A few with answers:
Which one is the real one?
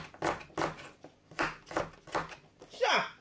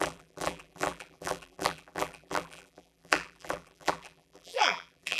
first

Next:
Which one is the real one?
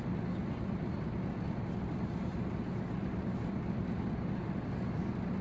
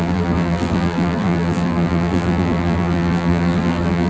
first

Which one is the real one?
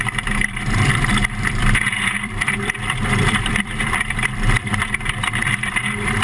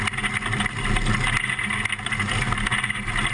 second